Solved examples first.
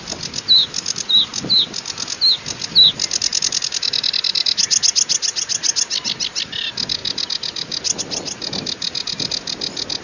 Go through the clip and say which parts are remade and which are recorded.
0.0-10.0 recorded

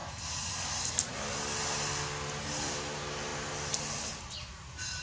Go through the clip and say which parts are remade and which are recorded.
0.0-5.0 recorded

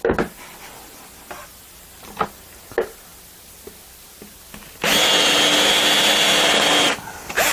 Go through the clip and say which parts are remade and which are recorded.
0.0-7.5 recorded

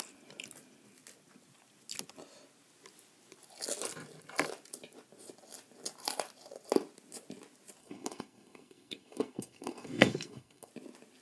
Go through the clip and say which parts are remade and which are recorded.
0.0-7.8 recorded; 7.8-10.7 remade; 10.7-11.2 recorded

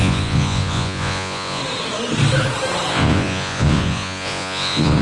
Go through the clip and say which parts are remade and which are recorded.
0.0-1.6 remade; 1.6-2.9 recorded; 2.9-5.0 remade

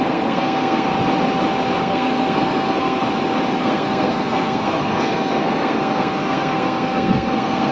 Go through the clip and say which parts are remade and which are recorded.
0.0-0.9 remade; 0.9-1.8 recorded; 1.8-3.0 remade; 3.0-3.6 recorded; 3.6-7.7 remade

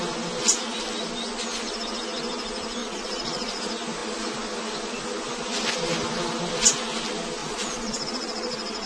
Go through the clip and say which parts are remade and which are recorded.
0.0-2.8 recorded; 2.8-3.6 remade; 3.6-7.4 recorded; 7.4-8.9 remade

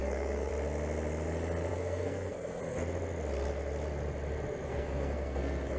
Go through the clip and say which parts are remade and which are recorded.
0.0-0.5 remade; 0.5-1.7 recorded; 1.7-2.6 remade; 2.6-4.7 recorded; 4.7-5.8 remade